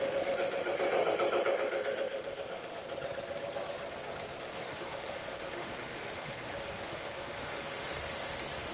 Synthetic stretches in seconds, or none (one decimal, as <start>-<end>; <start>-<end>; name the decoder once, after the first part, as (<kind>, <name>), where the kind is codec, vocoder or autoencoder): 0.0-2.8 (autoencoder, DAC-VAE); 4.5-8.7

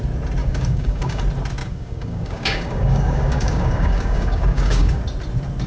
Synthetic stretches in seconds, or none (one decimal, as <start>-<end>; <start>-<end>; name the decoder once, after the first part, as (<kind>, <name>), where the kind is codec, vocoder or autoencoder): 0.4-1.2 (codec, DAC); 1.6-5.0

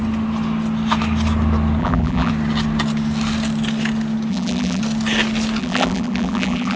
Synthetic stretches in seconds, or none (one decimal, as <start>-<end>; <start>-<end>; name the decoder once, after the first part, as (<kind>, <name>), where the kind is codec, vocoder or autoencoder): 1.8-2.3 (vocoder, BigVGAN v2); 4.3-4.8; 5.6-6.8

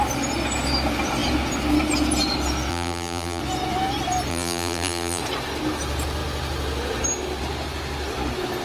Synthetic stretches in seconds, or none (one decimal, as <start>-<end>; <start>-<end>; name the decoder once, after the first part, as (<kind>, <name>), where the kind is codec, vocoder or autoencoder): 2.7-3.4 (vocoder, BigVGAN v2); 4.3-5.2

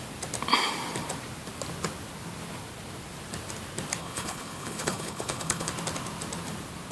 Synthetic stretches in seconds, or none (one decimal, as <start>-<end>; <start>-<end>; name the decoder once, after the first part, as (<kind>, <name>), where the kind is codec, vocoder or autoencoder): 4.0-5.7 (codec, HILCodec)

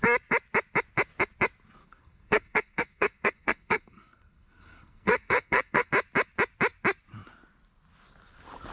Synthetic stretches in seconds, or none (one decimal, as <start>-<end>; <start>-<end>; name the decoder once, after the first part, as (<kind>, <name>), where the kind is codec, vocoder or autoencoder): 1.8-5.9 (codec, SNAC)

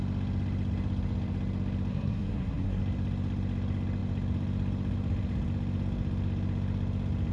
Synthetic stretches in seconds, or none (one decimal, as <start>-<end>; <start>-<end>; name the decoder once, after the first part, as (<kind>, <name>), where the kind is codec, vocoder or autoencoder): 1.9-2.8 (codec, SNAC)

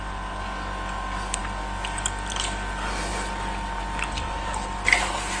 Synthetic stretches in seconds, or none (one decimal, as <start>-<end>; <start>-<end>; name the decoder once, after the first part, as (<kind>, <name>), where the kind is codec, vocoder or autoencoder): none